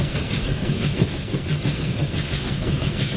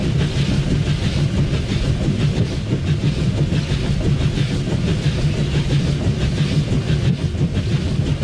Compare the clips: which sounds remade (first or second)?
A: first